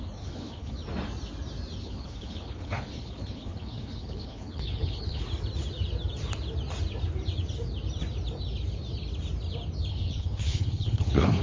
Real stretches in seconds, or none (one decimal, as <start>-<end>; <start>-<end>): 0.8-1.8; 5.2-9.9